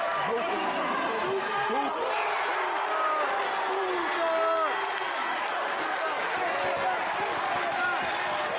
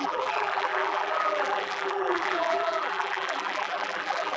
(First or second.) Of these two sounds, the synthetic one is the second